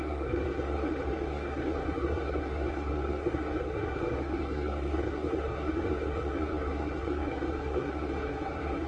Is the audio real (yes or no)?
no